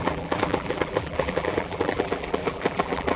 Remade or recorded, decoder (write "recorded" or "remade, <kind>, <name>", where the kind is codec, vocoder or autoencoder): remade, vocoder, BigVGAN v2